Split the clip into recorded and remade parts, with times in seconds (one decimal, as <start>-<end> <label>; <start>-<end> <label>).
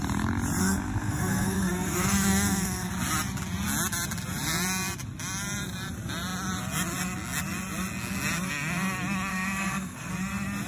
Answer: 0.0-0.6 recorded; 0.6-2.9 remade; 2.9-9.3 recorded; 9.3-10.1 remade; 10.1-10.7 recorded